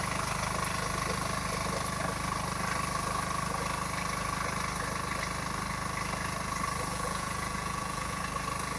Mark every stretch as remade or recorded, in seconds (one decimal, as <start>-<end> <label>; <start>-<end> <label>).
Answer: 0.0-6.9 recorded; 6.9-8.2 remade; 8.2-8.8 recorded